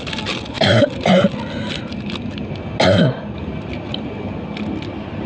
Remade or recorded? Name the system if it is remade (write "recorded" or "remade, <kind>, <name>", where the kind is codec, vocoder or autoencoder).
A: recorded